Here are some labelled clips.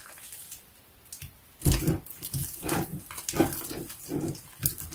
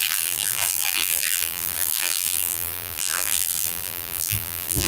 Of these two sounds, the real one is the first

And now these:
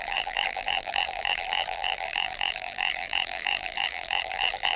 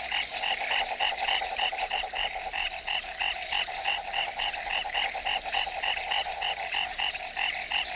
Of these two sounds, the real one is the second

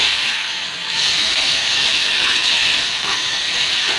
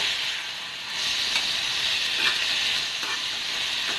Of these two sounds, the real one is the second